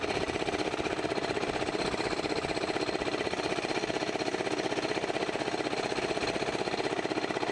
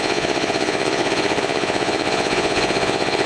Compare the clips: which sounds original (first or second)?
first